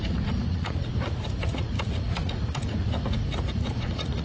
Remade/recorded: remade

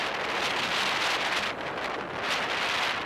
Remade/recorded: recorded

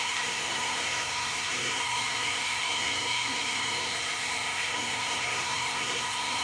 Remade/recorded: remade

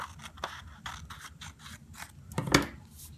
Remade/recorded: recorded